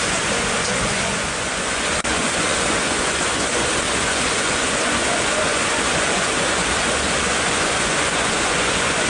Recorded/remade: remade